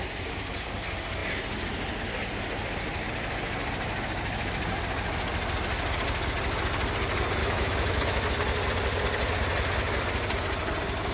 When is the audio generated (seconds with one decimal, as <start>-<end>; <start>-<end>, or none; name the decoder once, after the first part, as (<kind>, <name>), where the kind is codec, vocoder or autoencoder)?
7.4-8.3 (autoencoder, DAC-VAE)